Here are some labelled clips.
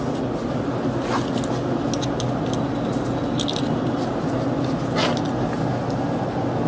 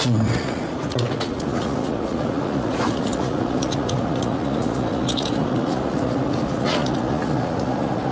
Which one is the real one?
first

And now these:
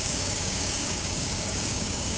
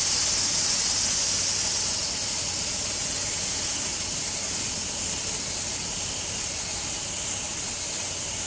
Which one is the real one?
second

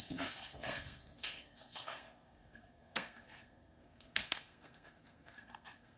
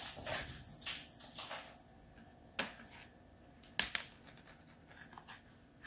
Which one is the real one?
second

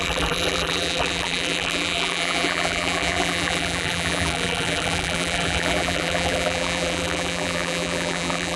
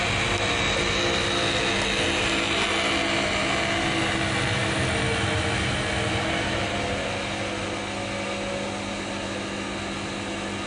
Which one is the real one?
second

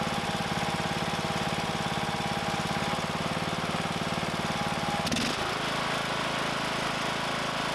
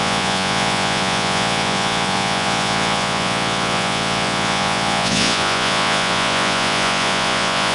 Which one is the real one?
first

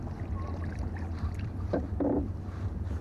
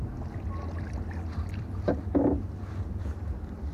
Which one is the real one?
second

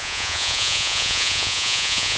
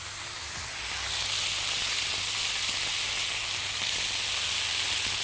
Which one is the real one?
second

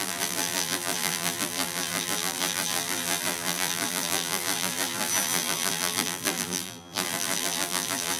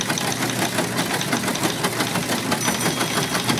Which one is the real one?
second